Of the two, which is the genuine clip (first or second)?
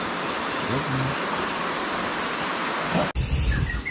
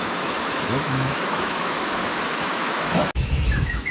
first